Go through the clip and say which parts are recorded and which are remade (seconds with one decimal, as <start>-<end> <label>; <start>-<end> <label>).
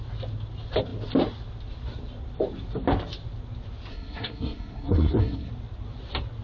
0.0-3.9 recorded; 3.9-5.5 remade; 5.5-6.4 recorded